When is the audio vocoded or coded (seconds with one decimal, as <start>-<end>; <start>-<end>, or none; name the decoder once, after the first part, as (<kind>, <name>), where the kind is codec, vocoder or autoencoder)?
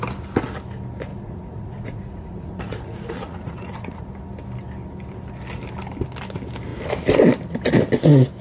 1.1-4.1 (vocoder, Vocos)